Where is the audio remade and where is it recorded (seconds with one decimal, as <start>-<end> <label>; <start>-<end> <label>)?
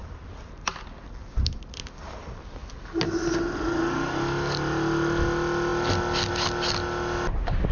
0.0-1.6 remade; 1.6-7.7 recorded